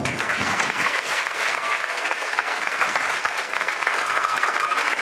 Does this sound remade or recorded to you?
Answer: remade